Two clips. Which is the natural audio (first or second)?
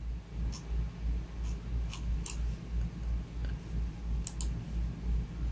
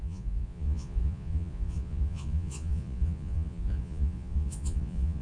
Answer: first